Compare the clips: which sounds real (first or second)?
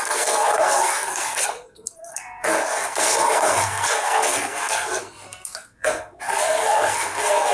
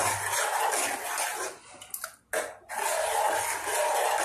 second